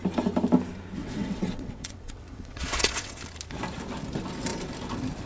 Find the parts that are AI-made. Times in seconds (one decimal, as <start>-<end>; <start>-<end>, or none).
1.0-3.2